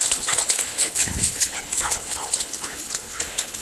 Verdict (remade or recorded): remade